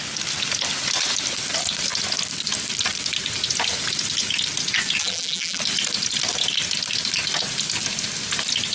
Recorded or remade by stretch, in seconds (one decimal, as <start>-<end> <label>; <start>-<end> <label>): 0.0-5.0 recorded; 5.0-5.6 remade; 5.6-8.7 recorded